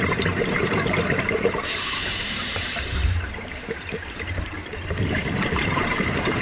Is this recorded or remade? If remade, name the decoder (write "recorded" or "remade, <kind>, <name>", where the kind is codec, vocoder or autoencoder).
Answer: remade, vocoder, BigVGAN v2